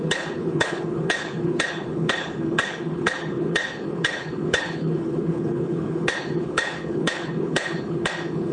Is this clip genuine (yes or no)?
no